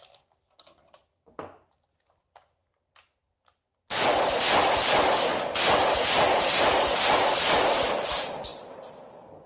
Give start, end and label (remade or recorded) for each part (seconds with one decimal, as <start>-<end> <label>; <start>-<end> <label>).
0.0-9.5 recorded